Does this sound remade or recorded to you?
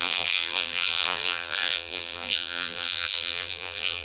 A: remade